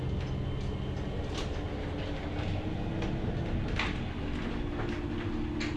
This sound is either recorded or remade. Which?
recorded